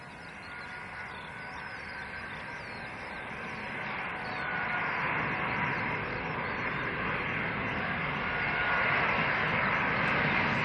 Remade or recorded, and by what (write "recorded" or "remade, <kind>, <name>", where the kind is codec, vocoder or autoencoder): recorded